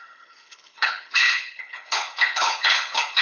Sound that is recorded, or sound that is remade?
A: remade